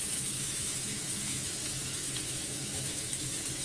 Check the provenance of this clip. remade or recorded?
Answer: remade